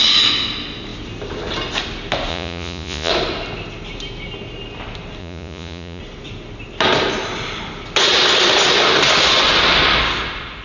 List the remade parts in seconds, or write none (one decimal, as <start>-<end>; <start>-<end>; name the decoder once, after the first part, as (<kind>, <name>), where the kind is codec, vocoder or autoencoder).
2.3-3.1 (vocoder, Vocos); 5.2-6.0